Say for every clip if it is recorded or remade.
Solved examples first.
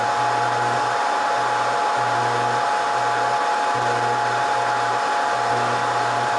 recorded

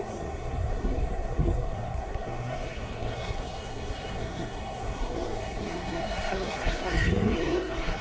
remade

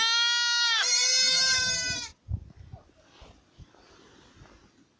recorded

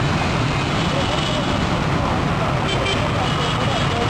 recorded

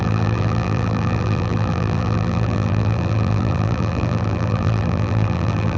remade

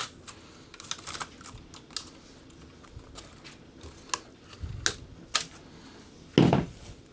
recorded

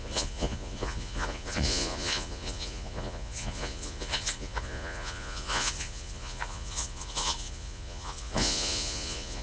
remade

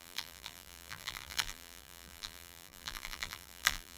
remade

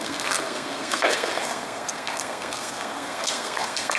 remade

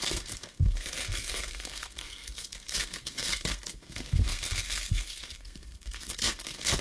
remade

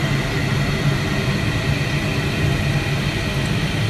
recorded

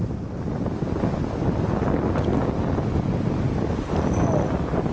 recorded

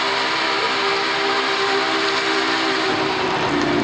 recorded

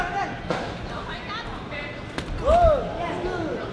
recorded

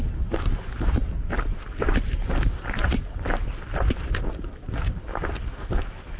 recorded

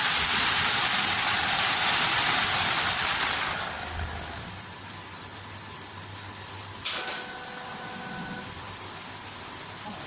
recorded